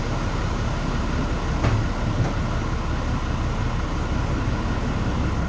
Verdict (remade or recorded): recorded